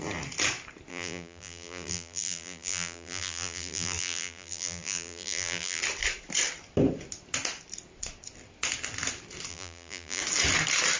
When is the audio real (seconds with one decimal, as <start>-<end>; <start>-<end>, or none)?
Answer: 0.0-0.9; 5.8-9.5; 10.2-11.0